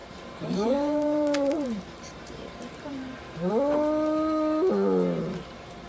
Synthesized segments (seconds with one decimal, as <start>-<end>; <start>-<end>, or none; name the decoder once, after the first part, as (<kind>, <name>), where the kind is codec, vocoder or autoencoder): 0.0-3.5 (vocoder, BigVGAN v2)

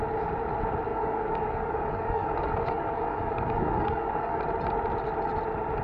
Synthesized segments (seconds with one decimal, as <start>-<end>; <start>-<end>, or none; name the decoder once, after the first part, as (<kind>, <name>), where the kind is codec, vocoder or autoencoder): 0.9-4.4 (codec, DAC)

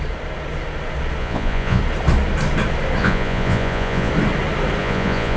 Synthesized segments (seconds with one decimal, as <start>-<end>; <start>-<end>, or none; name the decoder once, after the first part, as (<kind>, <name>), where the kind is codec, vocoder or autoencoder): 1.2-1.8 (vocoder, Vocos); 3.0-4.1; 4.8-5.4